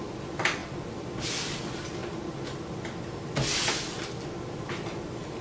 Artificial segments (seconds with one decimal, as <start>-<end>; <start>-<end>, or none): none